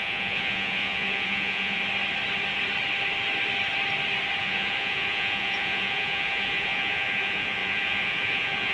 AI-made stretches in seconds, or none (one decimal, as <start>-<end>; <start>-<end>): 0.0-1.8; 4.4-8.7

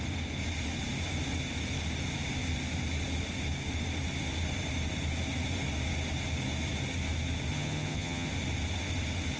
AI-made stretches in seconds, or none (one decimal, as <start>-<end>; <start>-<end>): 7.5-8.3

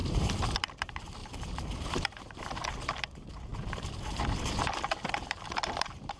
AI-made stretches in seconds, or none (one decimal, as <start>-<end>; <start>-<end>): 0.6-1.2; 1.9-3.5; 5.1-6.2

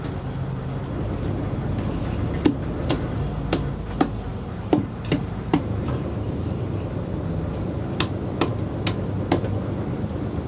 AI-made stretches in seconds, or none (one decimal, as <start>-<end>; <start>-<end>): 4.3-7.0

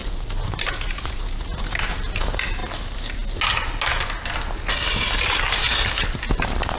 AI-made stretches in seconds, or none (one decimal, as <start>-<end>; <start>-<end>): none

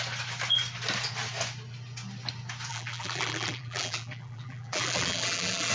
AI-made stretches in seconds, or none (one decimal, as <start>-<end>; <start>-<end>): 2.7-5.7

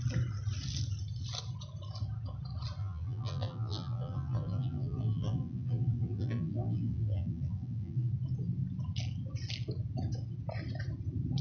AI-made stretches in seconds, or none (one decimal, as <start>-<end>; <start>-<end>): 2.8-8.1